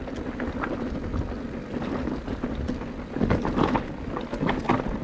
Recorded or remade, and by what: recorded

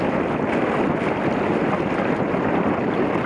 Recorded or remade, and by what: recorded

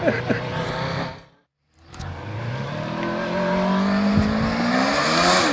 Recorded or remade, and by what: recorded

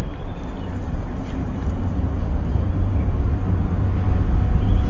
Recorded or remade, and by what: recorded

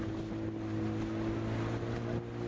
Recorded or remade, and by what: recorded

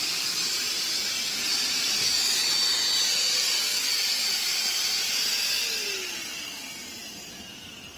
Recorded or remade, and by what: recorded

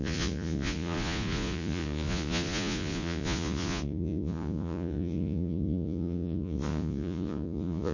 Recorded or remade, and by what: remade, vocoder, Vocos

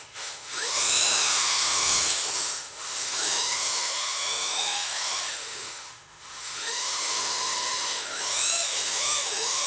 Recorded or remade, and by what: remade, autoencoder, DAC-VAE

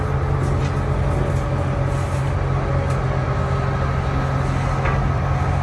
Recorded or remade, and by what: recorded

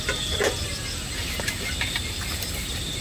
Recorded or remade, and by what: recorded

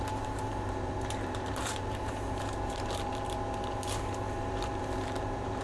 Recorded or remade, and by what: remade, vocoder, BigVGAN v2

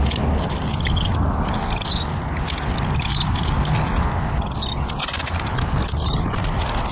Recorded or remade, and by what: recorded